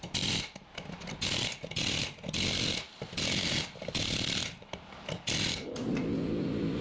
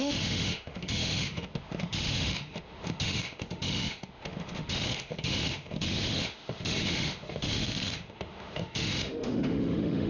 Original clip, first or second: first